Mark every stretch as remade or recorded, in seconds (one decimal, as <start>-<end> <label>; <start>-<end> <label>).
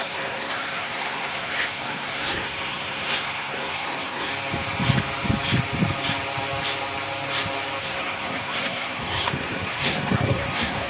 0.0-4.3 remade; 4.3-7.8 recorded; 7.8-10.9 remade